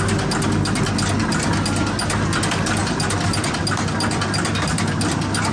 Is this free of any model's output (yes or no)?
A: yes